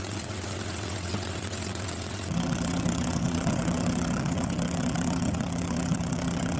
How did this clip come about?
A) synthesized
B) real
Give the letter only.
A